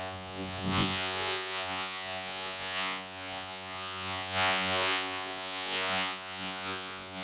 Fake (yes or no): yes